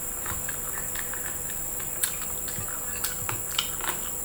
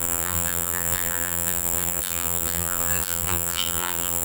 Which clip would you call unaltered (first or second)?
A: first